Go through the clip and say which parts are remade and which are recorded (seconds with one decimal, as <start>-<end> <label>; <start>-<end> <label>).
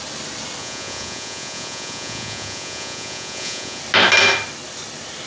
0.0-0.6 recorded; 0.6-3.8 remade; 3.8-5.3 recorded